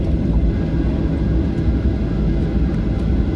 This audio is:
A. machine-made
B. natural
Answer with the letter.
B